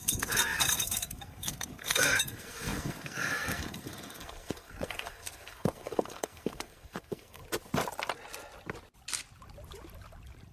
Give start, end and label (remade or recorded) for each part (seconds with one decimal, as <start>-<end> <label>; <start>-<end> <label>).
0.0-7.4 remade; 7.4-10.5 recorded